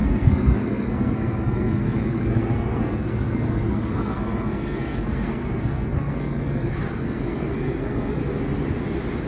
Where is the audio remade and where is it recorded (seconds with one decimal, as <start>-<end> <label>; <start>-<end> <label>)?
0.0-8.2 remade; 8.2-9.3 recorded